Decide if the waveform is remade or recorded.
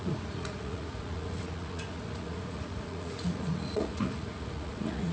remade